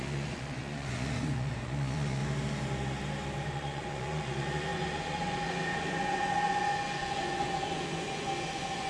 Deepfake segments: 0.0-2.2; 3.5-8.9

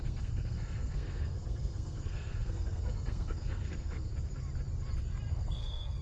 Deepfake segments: 0.0-4.1; 5.3-6.0

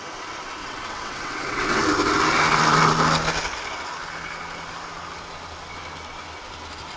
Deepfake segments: 0.6-1.8

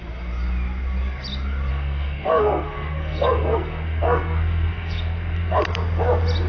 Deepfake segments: 1.7-5.6

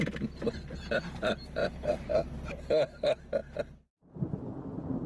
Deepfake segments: 1.6-2.3; 3.4-4.3